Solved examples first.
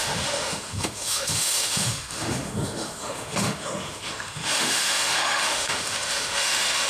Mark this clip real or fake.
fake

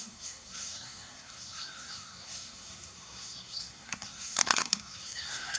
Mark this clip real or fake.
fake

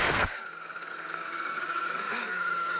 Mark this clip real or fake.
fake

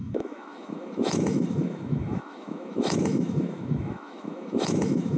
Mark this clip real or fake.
fake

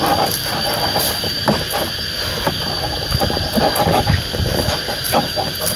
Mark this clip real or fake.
real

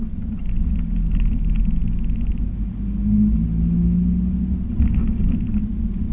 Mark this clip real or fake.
real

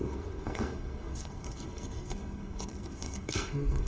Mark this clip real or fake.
fake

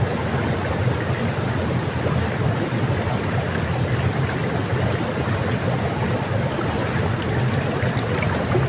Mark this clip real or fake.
real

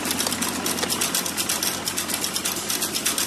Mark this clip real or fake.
real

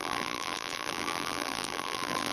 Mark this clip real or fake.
fake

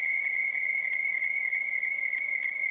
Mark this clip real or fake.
real